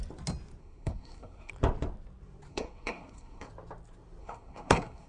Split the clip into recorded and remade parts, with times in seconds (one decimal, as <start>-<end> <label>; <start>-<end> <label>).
0.0-0.6 recorded; 0.6-1.5 remade; 1.5-2.5 recorded; 2.5-3.5 remade; 3.5-4.2 recorded; 4.2-5.1 remade